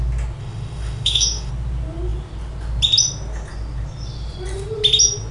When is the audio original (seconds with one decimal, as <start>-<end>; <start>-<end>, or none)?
0.0-0.4; 1.5-5.3